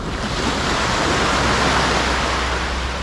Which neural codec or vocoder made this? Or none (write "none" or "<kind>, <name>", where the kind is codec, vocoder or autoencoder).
none